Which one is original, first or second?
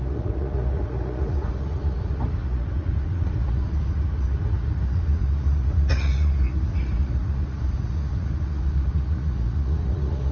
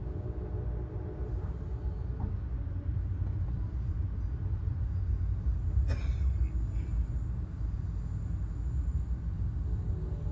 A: second